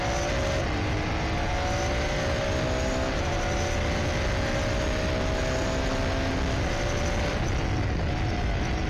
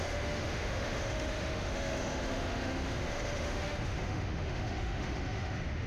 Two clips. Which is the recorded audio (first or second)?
first